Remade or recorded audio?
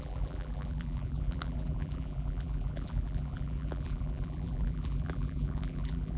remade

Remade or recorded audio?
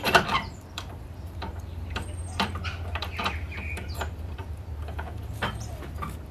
remade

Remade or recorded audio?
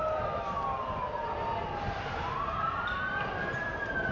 recorded